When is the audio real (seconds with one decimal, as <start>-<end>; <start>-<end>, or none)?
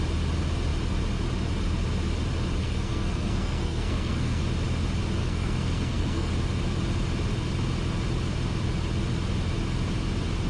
0.0-2.6; 4.4-5.2; 6.3-10.5